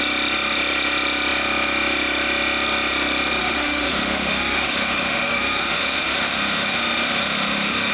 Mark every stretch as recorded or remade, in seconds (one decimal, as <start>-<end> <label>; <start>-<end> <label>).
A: 0.0-3.4 recorded; 3.4-7.9 remade